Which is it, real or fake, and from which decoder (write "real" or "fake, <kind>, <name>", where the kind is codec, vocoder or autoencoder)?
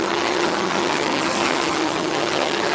fake, vocoder, HiFi-GAN